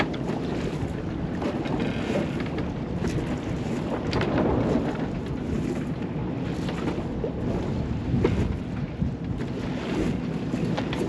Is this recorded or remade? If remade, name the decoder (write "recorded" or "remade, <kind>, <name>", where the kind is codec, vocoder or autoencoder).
recorded